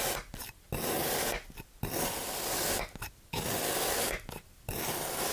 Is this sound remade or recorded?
recorded